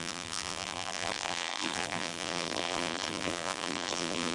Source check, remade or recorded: remade